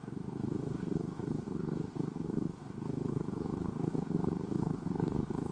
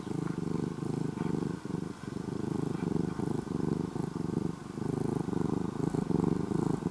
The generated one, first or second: first